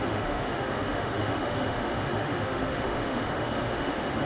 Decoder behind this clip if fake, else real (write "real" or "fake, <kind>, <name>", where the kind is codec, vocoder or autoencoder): fake, autoencoder, DAC-VAE